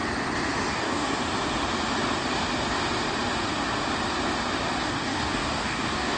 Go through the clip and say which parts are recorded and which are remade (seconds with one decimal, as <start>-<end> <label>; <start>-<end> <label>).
0.0-0.7 recorded; 0.7-1.1 remade; 1.1-4.8 recorded; 4.8-6.2 remade